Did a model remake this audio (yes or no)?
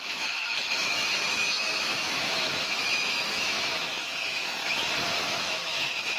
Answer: yes